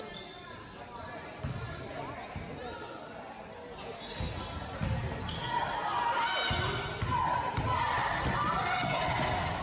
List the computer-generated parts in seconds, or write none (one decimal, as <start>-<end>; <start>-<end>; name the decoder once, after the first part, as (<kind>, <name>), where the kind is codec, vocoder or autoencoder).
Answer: none